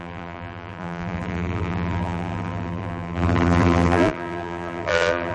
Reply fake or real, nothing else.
fake